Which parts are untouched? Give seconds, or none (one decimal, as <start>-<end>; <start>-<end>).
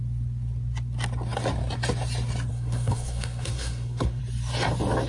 0.0-2.5; 4.2-5.1